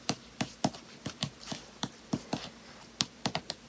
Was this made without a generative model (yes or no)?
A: no